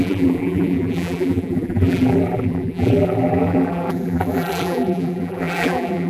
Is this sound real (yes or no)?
no